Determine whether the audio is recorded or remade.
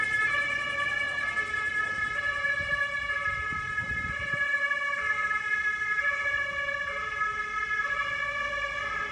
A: recorded